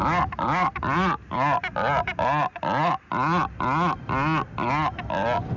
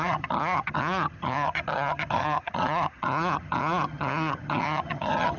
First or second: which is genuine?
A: first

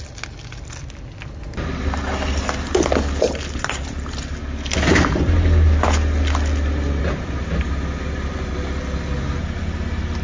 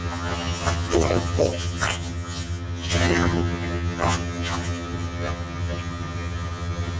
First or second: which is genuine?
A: first